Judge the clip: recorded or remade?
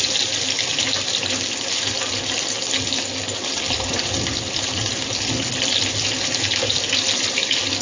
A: recorded